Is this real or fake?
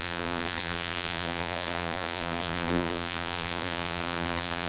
fake